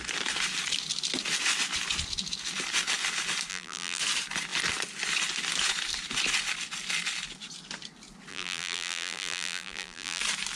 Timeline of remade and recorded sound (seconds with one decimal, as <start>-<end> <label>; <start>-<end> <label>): 0.0-3.5 recorded; 3.5-4.0 remade; 4.0-8.3 recorded; 8.3-10.2 remade; 10.2-10.6 recorded